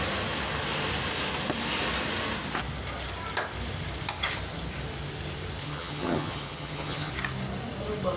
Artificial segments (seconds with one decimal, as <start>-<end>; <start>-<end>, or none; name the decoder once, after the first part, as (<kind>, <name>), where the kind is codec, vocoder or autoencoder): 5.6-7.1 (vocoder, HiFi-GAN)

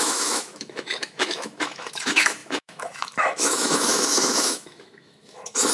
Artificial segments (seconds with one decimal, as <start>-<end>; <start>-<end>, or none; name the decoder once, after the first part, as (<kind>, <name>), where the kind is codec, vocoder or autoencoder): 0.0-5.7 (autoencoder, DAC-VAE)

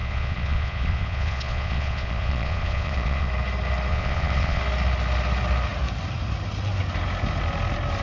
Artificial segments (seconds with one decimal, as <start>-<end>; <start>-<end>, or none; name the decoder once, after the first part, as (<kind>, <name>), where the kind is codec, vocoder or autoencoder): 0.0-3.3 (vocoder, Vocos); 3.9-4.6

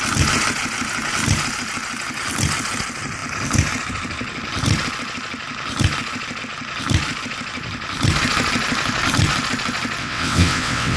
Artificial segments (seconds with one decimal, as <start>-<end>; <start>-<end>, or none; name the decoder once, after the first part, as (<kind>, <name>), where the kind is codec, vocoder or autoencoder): 10.0-11.0 (vocoder, WaveNeXt)